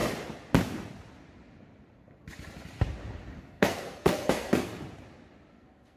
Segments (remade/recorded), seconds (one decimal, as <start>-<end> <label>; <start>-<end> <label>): 0.0-3.4 recorded; 3.4-4.7 remade; 4.7-5.5 recorded; 5.5-6.0 remade